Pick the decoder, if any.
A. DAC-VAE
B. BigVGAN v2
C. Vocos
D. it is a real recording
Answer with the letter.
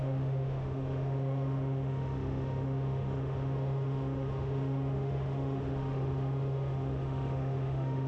A